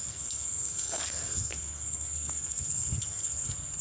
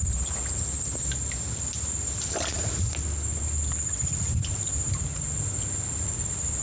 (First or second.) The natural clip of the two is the second